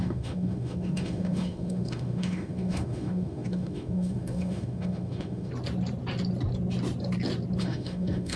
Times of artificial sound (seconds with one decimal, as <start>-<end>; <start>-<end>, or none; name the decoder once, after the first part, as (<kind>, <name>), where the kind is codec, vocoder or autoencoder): 0.0-5.5 (autoencoder, DAC-VAE); 7.6-8.4